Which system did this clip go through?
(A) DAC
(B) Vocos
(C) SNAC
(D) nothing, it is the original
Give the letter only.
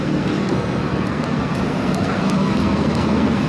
C